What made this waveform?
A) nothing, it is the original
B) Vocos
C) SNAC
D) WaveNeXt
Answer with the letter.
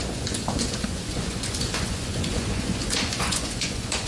B